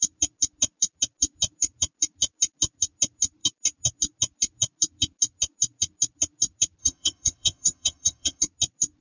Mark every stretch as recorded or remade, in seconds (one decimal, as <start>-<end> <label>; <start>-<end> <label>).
0.0-6.8 recorded; 6.8-8.4 remade; 8.4-9.0 recorded